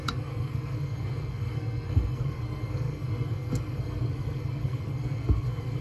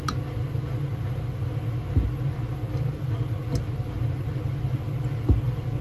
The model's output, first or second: first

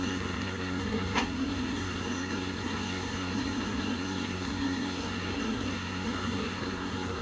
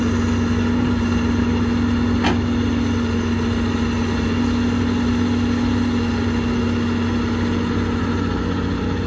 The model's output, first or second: first